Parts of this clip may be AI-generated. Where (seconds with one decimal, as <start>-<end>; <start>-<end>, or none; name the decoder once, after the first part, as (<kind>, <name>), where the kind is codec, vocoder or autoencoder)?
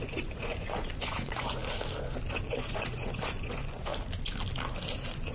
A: 0.0-1.6 (vocoder, Vocos); 2.5-3.9